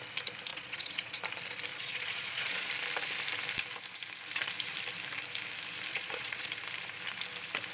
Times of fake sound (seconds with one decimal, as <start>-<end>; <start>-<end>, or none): 0.5-1.2; 1.7-2.7; 5.9-6.5